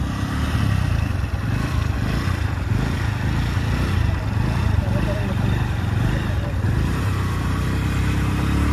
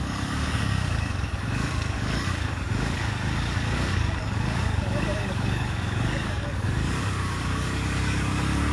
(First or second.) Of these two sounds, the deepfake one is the second